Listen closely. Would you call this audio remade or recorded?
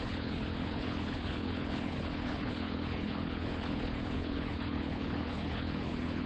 remade